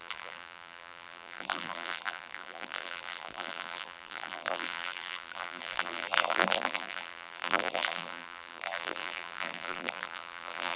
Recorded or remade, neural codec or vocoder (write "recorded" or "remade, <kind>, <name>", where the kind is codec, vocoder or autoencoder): remade, vocoder, BigVGAN v2